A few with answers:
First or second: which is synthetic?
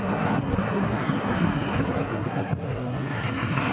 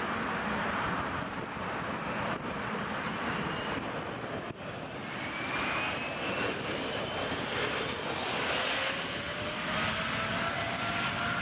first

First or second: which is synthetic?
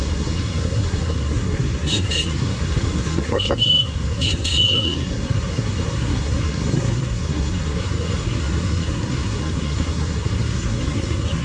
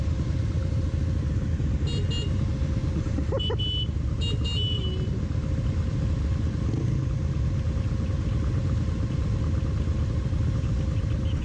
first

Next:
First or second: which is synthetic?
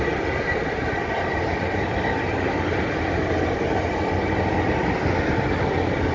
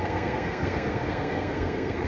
second